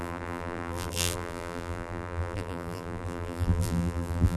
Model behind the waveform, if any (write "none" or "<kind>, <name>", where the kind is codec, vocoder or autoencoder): vocoder, BigVGAN v2